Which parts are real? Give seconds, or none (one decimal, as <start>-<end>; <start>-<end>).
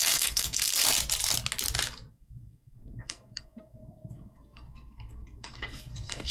0.7-2.1